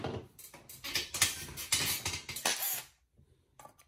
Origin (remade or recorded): recorded